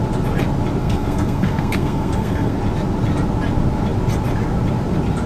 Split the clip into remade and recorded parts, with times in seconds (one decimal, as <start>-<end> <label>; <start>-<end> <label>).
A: 0.0-0.8 recorded; 0.8-2.6 remade; 2.6-5.3 recorded